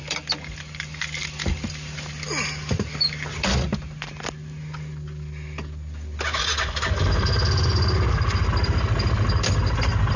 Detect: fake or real real